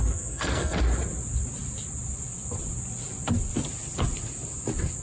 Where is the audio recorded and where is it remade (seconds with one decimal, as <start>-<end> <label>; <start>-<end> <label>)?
0.0-0.8 remade; 0.8-5.0 recorded